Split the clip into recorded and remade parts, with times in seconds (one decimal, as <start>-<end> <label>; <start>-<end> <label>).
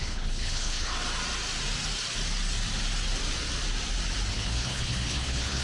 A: 0.0-0.9 remade; 0.9-4.3 recorded; 4.3-5.6 remade